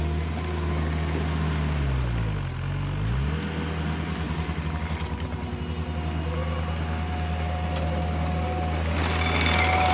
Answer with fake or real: real